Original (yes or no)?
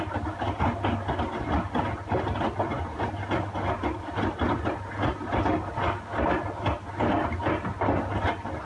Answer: yes